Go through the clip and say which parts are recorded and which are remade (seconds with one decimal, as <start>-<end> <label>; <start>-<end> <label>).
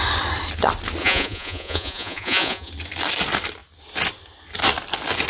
0.0-1.0 recorded; 1.0-2.7 remade; 2.7-5.3 recorded